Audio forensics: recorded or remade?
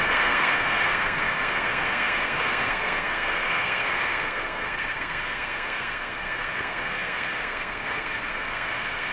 remade